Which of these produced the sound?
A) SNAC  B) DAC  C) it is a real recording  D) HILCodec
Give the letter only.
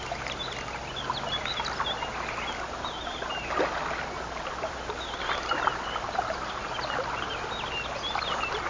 C